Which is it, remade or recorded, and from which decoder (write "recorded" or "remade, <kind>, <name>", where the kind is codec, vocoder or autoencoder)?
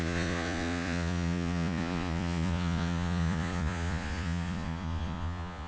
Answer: remade, vocoder, Vocos